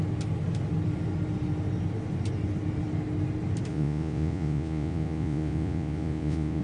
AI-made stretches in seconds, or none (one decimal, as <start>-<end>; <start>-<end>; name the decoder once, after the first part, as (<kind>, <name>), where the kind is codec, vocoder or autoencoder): 3.7-6.6 (vocoder, Vocos)